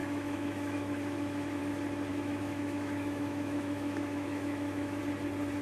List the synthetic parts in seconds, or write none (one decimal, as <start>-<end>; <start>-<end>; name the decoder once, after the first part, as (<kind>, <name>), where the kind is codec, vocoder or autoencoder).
0.0-1.6 (autoencoder, DAC-VAE); 2.1-5.0